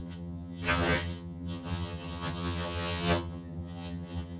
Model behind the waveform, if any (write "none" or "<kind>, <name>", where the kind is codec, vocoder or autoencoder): vocoder, HiFi-GAN